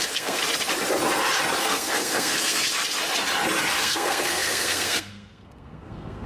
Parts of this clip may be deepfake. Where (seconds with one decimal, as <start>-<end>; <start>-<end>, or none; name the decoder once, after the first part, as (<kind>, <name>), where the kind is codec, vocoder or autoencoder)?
0.0-0.4 (codec, SNAC); 1.6-2.7; 3.8-6.3

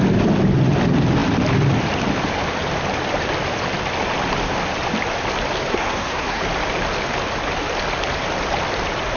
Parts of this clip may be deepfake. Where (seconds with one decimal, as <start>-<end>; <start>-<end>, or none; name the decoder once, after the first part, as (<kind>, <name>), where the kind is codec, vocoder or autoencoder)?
5.7-6.4 (codec, SNAC)

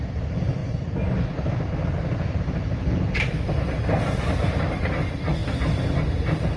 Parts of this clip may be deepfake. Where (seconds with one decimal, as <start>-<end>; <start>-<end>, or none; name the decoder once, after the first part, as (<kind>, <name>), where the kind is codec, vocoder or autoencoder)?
none